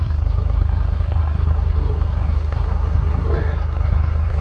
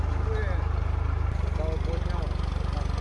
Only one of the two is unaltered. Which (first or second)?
second